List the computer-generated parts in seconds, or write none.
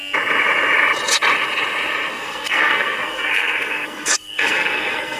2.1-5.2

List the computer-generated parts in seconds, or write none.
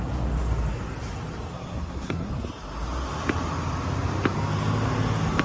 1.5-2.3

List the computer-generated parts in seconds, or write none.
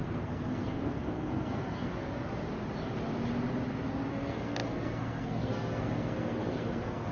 0.0-1.9; 4.1-7.1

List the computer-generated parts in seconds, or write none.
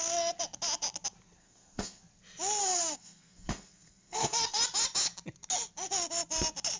1.4-2.0; 2.6-4.6